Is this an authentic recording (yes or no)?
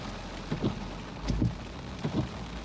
yes